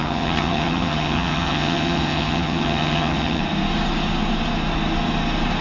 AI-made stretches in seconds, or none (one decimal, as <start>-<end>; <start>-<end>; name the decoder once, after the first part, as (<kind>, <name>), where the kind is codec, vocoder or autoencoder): 0.0-3.4 (vocoder, HiFi-GAN)